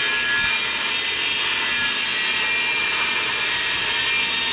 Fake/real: real